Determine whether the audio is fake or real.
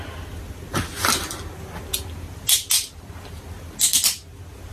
real